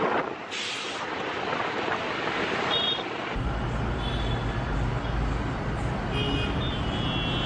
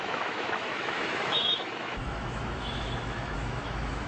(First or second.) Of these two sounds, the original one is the first